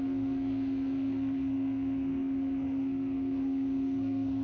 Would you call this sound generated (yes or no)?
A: yes